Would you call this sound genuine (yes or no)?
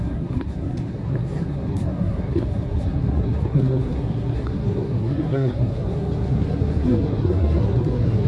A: no